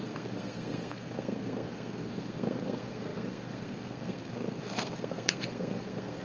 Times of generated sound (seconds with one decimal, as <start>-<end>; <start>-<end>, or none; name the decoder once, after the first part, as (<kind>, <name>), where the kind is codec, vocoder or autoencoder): 0.0-6.2 (codec, SNAC)

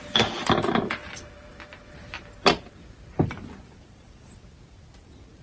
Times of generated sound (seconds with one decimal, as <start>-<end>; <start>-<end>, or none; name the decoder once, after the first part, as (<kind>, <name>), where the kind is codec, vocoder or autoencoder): none

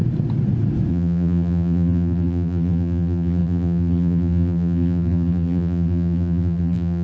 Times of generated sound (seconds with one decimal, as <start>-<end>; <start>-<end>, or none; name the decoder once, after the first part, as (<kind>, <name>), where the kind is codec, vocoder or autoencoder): 0.9-7.0 (vocoder, BigVGAN v2)

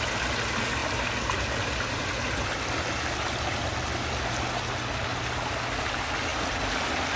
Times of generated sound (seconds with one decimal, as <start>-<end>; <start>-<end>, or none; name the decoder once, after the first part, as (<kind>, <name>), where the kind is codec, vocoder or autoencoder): none